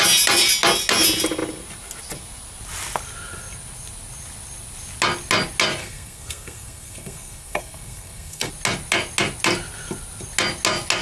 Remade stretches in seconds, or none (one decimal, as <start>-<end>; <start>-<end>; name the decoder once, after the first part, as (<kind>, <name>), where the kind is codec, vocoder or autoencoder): 5.8-8.5 (codec, SNAC)

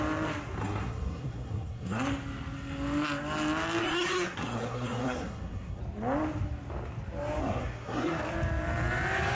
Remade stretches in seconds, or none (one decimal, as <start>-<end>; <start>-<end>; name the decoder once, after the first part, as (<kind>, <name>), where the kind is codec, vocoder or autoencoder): 0.6-2.0 (codec, SNAC); 3.8-5.8; 7.4-8.2

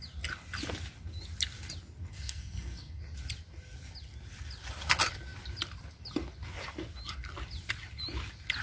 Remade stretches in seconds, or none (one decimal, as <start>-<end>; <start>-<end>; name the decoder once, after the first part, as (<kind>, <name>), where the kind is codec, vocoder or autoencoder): 2.1-3.0 (codec, SNAC)

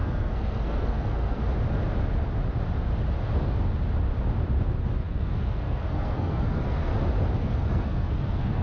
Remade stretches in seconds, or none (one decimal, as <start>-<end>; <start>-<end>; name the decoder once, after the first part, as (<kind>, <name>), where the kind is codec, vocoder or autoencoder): 0.0-1.4 (codec, SNAC); 5.0-6.9; 7.4-8.6

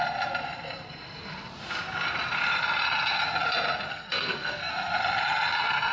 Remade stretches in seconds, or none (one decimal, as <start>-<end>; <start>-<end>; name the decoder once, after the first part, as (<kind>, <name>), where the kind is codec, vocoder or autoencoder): 3.9-4.7 (codec, SNAC)